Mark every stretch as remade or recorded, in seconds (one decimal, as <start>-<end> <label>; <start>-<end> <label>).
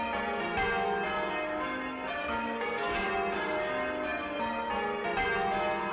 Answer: 0.0-2.2 recorded; 2.2-3.1 remade; 3.1-5.9 recorded